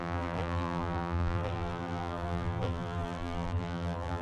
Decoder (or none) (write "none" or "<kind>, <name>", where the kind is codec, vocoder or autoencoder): vocoder, BigVGAN v2